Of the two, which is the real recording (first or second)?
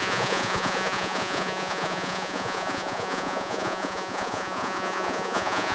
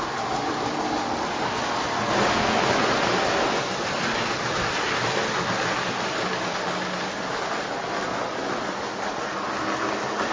second